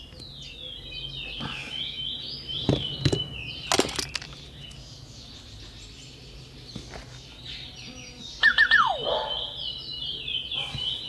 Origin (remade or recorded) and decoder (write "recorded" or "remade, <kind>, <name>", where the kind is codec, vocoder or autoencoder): recorded